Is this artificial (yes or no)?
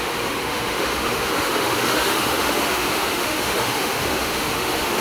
yes